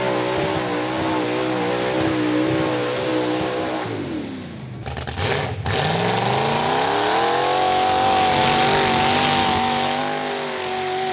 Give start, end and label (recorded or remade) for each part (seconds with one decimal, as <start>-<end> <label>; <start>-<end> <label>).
0.0-9.4 recorded; 9.4-10.0 remade; 10.0-11.1 recorded